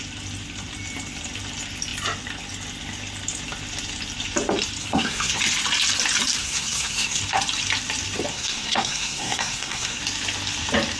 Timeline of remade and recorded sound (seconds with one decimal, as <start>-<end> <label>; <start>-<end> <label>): 0.0-4.8 recorded; 4.8-5.4 remade; 5.4-6.4 recorded; 6.4-7.2 remade; 7.2-8.3 recorded; 8.3-10.0 remade; 10.0-11.0 recorded